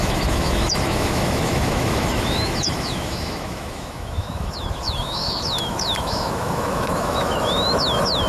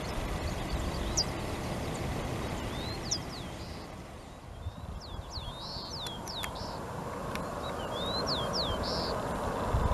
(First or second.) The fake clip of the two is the first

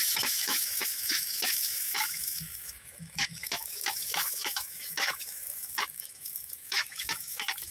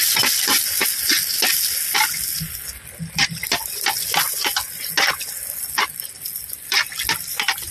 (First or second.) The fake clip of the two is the first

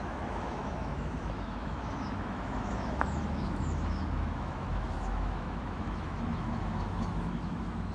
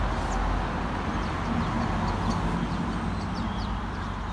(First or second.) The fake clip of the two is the first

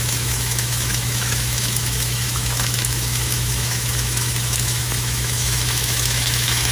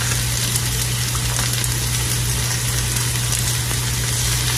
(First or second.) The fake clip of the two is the first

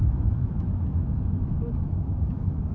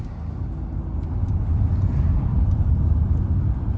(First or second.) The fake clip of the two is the first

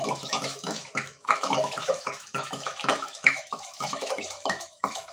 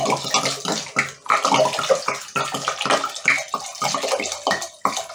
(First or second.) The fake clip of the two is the first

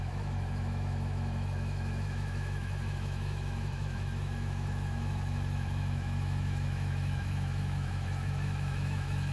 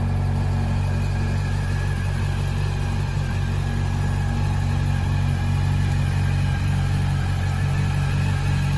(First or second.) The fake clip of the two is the first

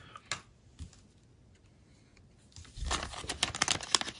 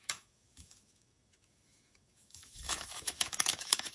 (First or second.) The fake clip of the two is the second